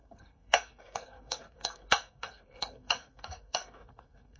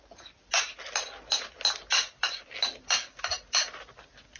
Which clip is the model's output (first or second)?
first